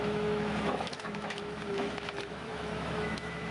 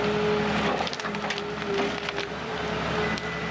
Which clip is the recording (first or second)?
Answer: second